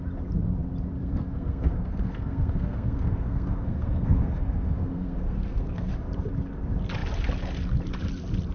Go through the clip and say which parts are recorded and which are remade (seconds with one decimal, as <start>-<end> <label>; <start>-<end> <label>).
0.0-1.0 recorded; 1.0-5.9 remade; 5.9-8.5 recorded